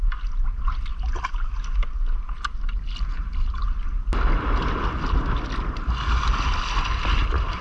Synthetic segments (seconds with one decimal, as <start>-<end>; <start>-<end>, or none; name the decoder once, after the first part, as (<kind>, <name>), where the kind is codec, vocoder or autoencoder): none